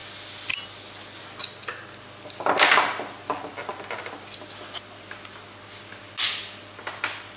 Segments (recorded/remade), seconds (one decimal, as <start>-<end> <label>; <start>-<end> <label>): 0.0-7.4 recorded